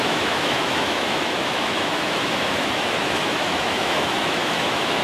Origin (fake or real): fake